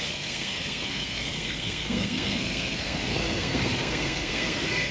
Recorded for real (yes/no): no